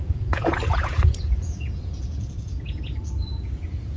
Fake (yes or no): yes